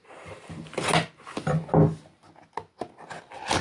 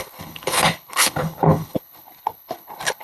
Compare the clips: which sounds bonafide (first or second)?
first